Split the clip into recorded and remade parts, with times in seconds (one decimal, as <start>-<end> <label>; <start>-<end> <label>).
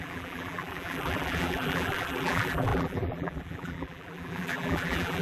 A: 0.0-5.2 remade